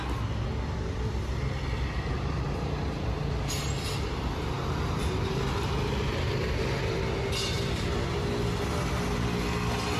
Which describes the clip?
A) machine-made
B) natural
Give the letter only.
B